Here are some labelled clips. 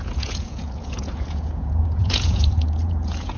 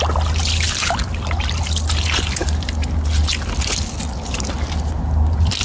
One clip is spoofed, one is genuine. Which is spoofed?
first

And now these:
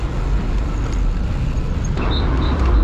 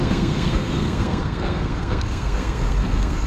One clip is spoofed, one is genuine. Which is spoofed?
second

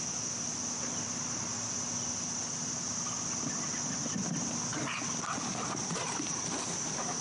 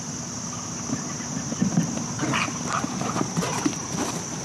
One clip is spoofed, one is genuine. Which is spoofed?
second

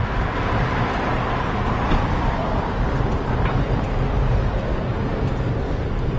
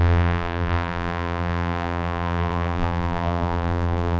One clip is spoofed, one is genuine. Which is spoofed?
second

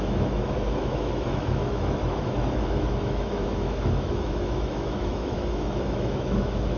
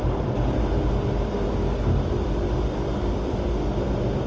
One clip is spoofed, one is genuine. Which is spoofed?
first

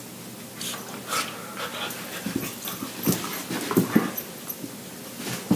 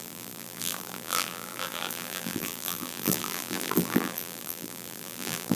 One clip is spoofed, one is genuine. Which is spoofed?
second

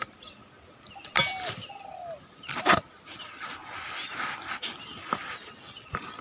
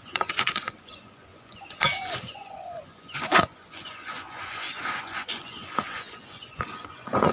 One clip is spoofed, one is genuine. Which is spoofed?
second